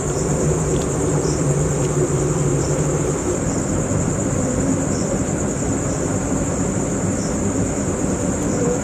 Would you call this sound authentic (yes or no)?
no